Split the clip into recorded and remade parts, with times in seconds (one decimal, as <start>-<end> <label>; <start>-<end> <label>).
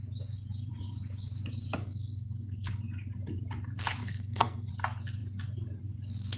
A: 0.0-1.8 recorded; 1.8-2.8 remade; 2.8-4.0 recorded; 4.0-4.7 remade; 4.7-6.4 recorded